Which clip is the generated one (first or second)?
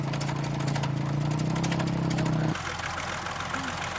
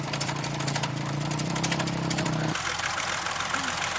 second